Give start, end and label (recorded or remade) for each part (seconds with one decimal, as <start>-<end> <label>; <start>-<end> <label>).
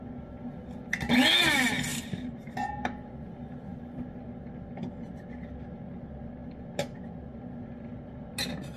0.0-1.9 recorded; 1.9-2.7 remade; 2.7-3.7 recorded; 3.7-4.3 remade; 4.3-8.8 recorded